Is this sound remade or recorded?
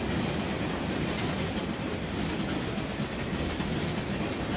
recorded